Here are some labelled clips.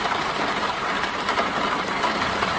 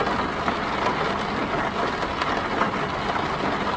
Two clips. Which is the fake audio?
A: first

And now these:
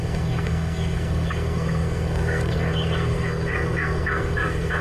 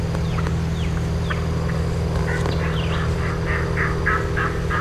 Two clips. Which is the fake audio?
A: first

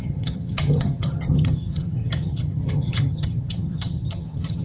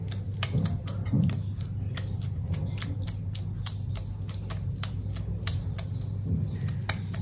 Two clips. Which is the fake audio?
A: first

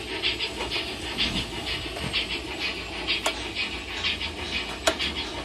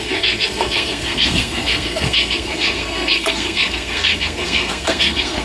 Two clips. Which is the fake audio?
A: second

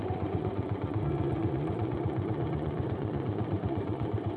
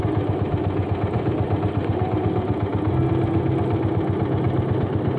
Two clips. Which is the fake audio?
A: first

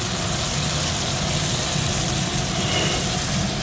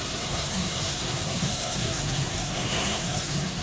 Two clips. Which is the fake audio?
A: second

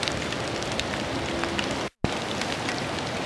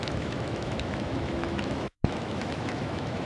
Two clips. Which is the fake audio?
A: second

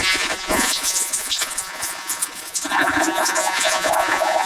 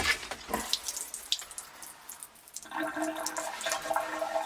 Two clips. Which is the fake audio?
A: first